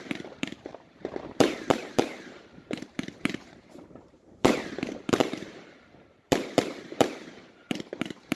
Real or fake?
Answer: fake